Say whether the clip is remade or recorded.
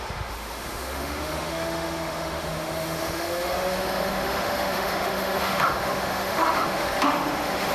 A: remade